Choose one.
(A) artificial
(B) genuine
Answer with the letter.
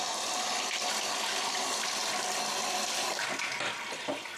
B